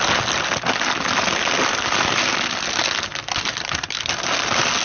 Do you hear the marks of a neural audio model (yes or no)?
no